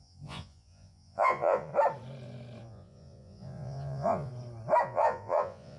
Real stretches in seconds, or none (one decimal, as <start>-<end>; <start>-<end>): 1.7-2.6; 4.3-4.8